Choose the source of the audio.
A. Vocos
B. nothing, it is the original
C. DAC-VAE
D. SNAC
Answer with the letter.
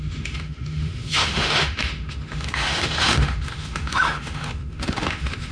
C